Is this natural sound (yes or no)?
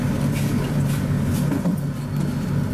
yes